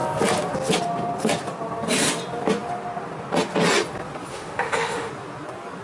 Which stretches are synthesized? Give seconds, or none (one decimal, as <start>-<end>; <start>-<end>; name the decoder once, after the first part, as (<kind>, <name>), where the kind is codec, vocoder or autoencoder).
4.3-5.1 (autoencoder, DAC-VAE)